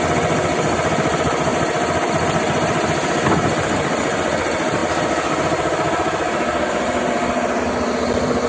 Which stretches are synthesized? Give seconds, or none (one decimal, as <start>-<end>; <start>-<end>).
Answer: none